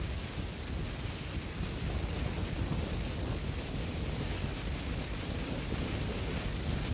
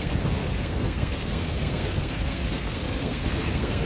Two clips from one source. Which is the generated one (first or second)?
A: second